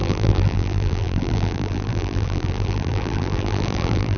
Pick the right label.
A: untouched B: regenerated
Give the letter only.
B